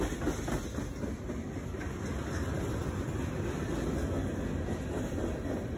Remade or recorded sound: recorded